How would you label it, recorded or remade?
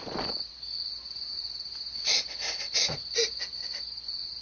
recorded